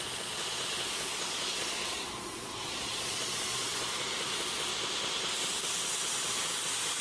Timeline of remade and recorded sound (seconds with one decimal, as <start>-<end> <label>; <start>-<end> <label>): 0.0-4.7 remade; 4.7-7.0 recorded